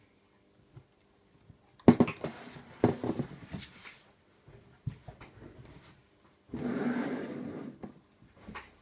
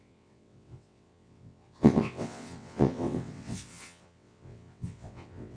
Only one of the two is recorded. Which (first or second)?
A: first